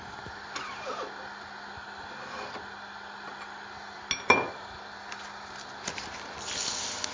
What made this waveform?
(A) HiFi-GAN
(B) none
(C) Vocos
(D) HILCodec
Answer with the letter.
B